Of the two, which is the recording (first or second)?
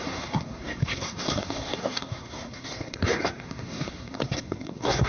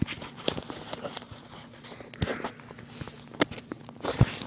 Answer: second